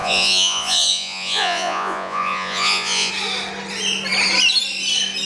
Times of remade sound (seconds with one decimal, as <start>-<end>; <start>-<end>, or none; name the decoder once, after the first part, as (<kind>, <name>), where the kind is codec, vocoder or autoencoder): 0.0-3.1 (vocoder, Vocos)